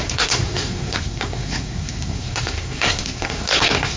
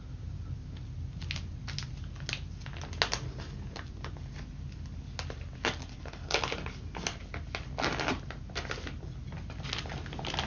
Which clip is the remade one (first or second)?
first